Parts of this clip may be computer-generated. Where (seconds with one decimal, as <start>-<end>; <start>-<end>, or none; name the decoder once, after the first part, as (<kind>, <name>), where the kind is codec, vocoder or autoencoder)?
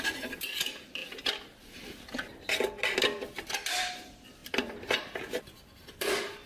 0.0-6.5 (vocoder, BigVGAN v2)